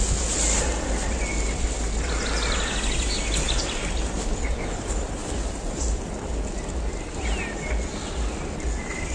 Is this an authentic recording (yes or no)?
yes